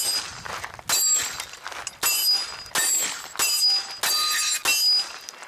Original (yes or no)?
yes